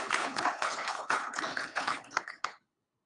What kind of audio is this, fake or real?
fake